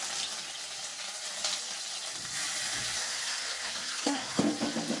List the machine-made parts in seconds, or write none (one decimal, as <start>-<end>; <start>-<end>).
3.0-4.4